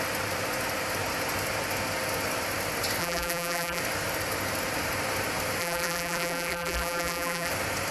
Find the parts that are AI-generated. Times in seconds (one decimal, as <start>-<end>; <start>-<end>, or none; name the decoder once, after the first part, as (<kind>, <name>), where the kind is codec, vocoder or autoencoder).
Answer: 3.0-3.8 (vocoder, BigVGAN v2); 5.6-7.5

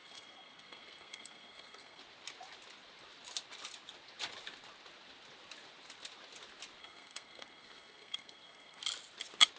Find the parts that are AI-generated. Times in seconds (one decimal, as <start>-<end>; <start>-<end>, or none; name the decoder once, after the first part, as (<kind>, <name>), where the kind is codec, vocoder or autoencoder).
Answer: 0.0-2.0 (codec, SNAC); 6.8-8.8

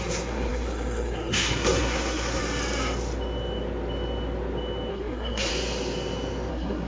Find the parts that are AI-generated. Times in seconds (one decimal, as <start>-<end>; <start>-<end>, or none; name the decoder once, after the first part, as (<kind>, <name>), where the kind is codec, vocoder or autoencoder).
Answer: 0.0-2.4 (codec, SNAC); 4.9-5.5; 6.5-6.9